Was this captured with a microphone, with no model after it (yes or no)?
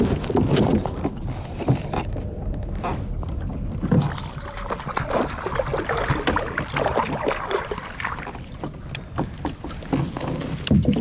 yes